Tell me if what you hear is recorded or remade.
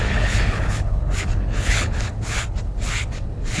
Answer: remade